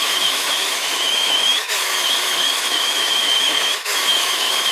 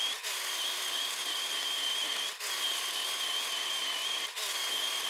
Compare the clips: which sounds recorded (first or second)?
second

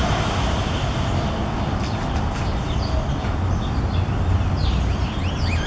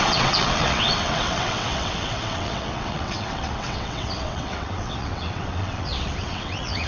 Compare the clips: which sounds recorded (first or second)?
first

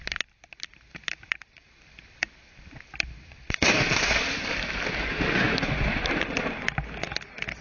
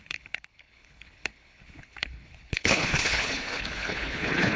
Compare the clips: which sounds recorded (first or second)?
first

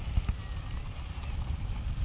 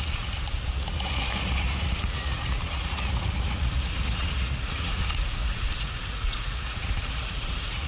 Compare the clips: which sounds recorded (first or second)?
first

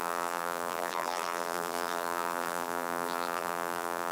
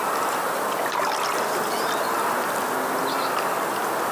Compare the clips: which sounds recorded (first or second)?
second